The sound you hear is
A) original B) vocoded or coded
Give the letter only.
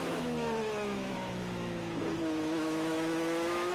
B